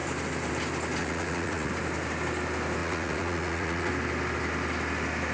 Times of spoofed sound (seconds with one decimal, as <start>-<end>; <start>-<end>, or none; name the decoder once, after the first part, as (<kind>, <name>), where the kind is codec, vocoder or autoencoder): 1.0-1.7 (vocoder, Vocos); 2.8-3.9